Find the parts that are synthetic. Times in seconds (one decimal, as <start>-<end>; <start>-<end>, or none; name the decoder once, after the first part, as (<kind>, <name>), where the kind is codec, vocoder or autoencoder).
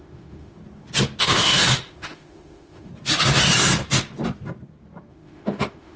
0.0-0.6 (autoencoder, DAC-VAE); 1.2-2.9; 5.1-6.0